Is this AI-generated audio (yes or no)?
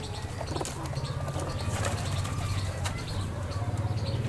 no